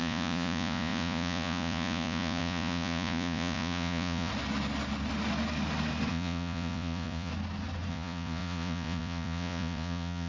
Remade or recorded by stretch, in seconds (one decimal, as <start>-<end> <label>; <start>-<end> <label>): 0.0-4.3 remade; 4.3-6.1 recorded; 6.1-7.3 remade; 7.3-7.9 recorded; 7.9-10.3 remade

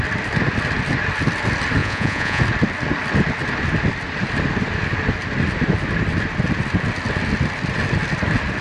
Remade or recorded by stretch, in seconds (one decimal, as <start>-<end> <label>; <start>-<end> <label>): 0.0-1.8 recorded; 1.8-2.4 remade; 2.4-8.6 recorded

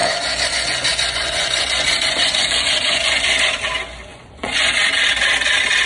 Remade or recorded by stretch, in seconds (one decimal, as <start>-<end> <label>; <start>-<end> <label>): 0.0-3.4 remade; 3.4-4.1 recorded; 4.1-4.8 remade; 4.8-5.9 recorded

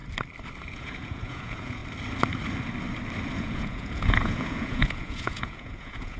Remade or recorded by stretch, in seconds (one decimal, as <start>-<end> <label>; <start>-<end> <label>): 0.0-0.6 recorded; 0.6-1.8 remade; 1.8-3.4 recorded; 3.4-6.2 remade

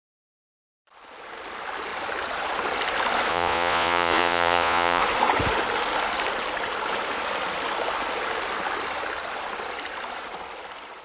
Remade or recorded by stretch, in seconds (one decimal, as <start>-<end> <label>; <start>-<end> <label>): 0.0-3.3 recorded; 3.3-5.0 remade; 5.0-11.0 recorded